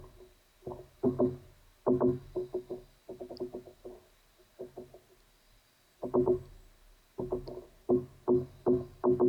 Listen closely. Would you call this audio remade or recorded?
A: recorded